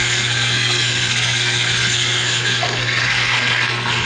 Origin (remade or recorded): remade